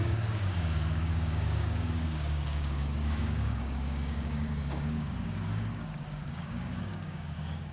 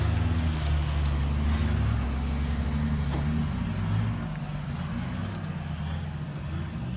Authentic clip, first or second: second